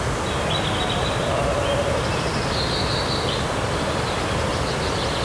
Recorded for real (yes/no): yes